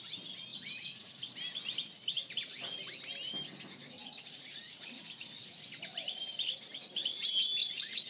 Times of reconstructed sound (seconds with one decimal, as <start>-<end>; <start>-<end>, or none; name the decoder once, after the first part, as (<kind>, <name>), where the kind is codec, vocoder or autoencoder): 0.5-1.2 (vocoder, Vocos); 4.0-5.6; 7.6-8.1